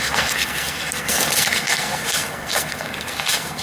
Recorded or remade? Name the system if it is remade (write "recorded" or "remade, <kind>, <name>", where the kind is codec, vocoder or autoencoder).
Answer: remade, codec, SNAC